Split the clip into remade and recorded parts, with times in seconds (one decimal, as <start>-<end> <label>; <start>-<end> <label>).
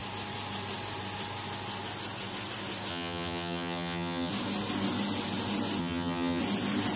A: 0.0-2.9 recorded; 2.9-4.3 remade; 4.3-5.8 recorded; 5.8-6.4 remade; 6.4-7.0 recorded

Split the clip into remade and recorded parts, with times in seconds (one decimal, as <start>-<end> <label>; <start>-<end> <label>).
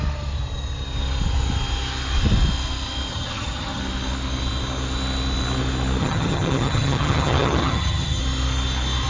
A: 0.0-3.1 recorded; 3.1-3.8 remade; 3.8-6.0 recorded; 6.0-8.2 remade; 8.2-9.1 recorded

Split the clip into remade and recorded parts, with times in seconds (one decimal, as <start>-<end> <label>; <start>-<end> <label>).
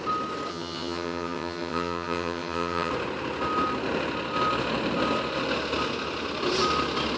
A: 0.0-0.5 recorded; 0.5-2.9 remade; 2.9-7.2 recorded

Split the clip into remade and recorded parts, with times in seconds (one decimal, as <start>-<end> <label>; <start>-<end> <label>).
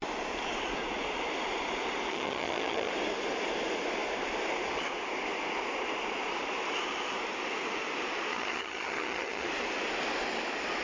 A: 0.0-2.1 recorded; 2.1-2.9 remade; 2.9-8.3 recorded; 8.3-9.5 remade; 9.5-10.8 recorded